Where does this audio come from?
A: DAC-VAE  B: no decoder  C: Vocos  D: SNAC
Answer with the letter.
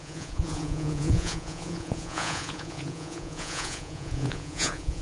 C